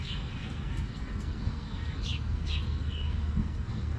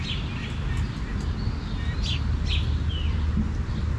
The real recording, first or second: second